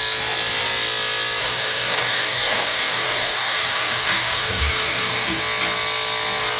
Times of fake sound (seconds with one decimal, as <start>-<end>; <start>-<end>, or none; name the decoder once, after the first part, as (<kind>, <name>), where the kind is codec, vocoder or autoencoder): 1.4-5.4 (codec, DAC)